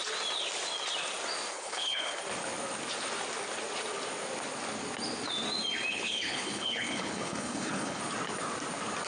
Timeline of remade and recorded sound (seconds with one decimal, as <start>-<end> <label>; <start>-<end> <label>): 0.0-1.5 recorded; 1.5-2.2 remade; 2.2-5.9 recorded; 5.9-8.0 remade; 8.0-9.1 recorded